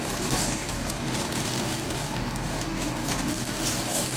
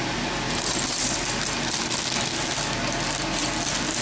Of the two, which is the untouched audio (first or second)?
second